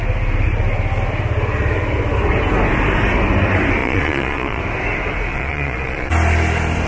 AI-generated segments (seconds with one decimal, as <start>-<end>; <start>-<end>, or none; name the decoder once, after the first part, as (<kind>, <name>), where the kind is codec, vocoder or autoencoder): 3.8-4.6 (vocoder, Vocos); 5.3-6.1